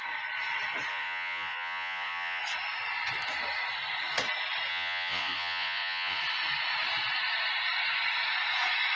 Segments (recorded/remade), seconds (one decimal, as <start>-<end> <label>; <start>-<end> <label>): 0.0-0.9 recorded; 0.9-2.4 remade; 2.4-4.7 recorded; 4.7-6.2 remade; 6.2-9.0 recorded

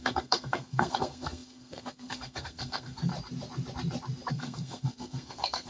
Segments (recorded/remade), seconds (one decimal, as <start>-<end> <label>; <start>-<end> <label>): 0.0-3.1 remade; 3.1-4.3 recorded; 4.3-5.7 remade

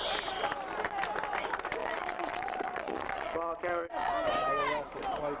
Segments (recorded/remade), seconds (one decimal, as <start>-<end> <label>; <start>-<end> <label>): 0.0-1.8 recorded; 1.8-4.1 remade; 4.1-5.4 recorded

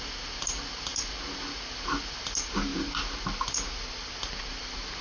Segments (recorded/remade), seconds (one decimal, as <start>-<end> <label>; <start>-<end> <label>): 0.0-5.0 recorded

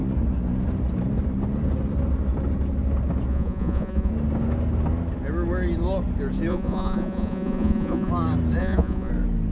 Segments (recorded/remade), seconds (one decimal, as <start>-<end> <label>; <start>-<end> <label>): 0.0-3.3 recorded; 3.3-4.1 remade; 4.1-6.5 recorded; 6.5-8.1 remade; 8.1-8.6 recorded; 8.6-9.1 remade; 9.1-9.5 recorded

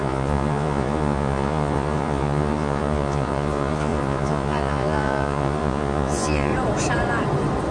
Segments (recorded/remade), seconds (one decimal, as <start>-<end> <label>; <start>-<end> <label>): 0.0-6.5 remade; 6.5-7.7 recorded

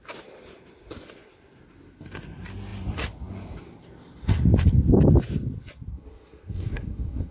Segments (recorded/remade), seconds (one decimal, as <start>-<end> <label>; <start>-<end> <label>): 0.0-5.9 recorded; 5.9-7.3 remade

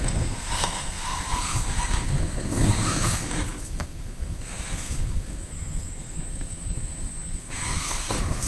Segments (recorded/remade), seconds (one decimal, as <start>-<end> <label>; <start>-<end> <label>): 0.0-8.5 remade